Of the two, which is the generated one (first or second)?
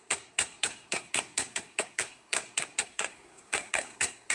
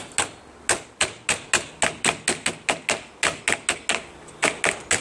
first